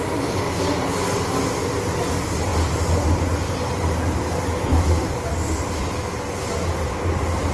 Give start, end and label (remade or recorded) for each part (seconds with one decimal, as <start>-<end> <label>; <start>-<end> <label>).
0.0-7.5 recorded

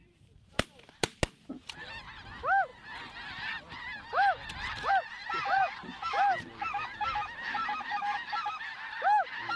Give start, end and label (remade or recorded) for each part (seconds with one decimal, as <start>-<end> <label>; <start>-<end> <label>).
0.0-1.0 remade; 1.0-7.6 recorded; 7.6-8.6 remade; 8.6-9.6 recorded

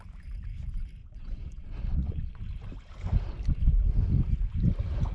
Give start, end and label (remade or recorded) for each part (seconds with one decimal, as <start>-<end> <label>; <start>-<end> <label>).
0.0-1.0 recorded; 1.0-2.4 remade; 2.4-5.1 recorded